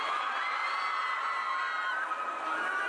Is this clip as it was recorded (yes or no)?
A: yes